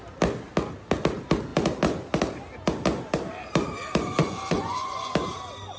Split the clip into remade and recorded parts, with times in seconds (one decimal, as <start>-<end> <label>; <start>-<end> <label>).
0.0-4.2 recorded; 4.2-5.1 remade; 5.1-5.8 recorded